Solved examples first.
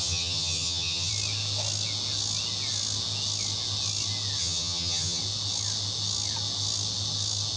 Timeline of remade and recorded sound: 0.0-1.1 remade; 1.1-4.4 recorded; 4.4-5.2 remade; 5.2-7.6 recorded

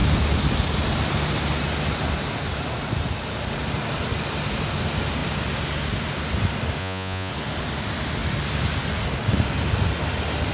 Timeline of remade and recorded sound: 0.0-6.8 recorded; 6.8-7.3 remade; 7.3-10.5 recorded

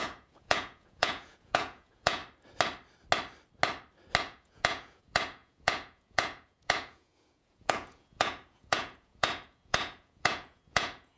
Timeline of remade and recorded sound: 0.0-2.2 remade; 2.2-4.2 recorded; 4.2-11.2 remade